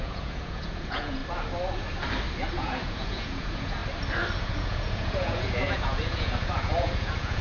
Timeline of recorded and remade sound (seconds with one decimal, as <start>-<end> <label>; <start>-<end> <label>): 0.0-1.2 remade; 1.2-2.5 recorded; 2.5-3.8 remade; 3.8-4.4 recorded; 4.4-7.4 remade